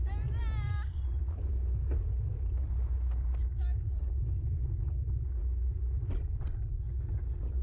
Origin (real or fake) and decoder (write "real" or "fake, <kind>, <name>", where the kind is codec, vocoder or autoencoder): real